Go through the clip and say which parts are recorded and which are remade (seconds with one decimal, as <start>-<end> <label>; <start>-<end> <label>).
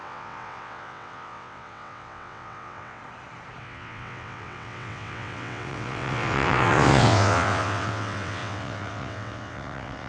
0.0-3.0 remade; 3.0-3.6 recorded; 3.6-10.1 remade